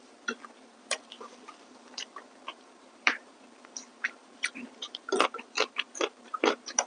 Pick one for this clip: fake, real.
fake